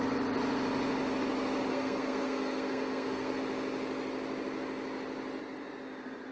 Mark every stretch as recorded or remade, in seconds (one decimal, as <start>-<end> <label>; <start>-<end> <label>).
0.0-1.7 recorded; 1.7-3.4 remade; 3.4-6.3 recorded